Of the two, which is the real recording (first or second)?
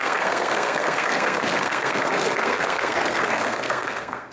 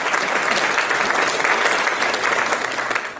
second